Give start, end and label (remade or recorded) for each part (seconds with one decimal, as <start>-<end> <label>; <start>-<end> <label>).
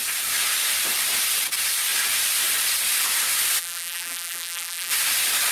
0.0-3.6 recorded; 3.6-4.9 remade; 4.9-5.5 recorded